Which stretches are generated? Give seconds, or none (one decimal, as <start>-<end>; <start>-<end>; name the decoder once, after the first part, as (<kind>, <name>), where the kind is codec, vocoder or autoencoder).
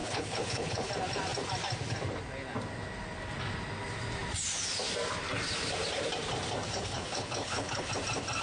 0.0-0.9 (codec, HILCodec); 6.7-7.9